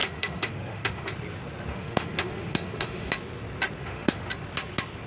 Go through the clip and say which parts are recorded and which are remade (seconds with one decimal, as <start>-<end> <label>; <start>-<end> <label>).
0.0-1.1 remade; 1.1-1.7 recorded; 1.7-3.1 remade; 3.1-3.8 recorded; 3.8-4.3 remade; 4.3-5.1 recorded